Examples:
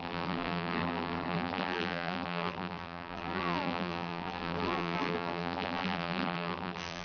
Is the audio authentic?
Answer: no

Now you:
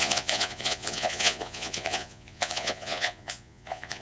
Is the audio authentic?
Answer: no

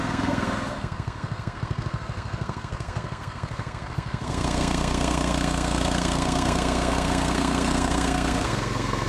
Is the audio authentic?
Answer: no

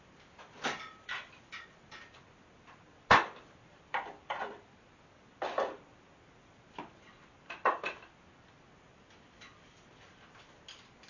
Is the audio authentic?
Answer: yes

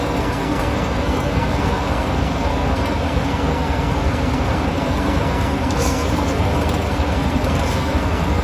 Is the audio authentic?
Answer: no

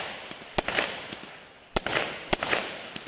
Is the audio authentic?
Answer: yes